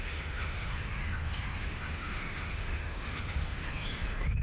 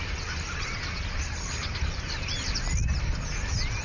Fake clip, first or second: first